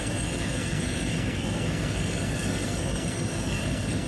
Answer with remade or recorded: remade